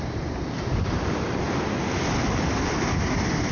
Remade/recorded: recorded